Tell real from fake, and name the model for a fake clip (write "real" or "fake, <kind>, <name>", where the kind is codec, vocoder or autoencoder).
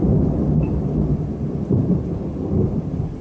real